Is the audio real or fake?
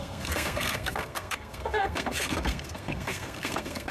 fake